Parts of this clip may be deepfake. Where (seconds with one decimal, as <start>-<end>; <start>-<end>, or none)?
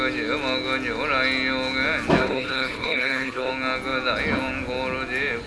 2.2-3.5